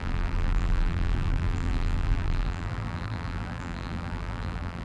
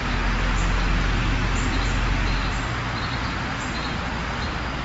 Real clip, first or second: second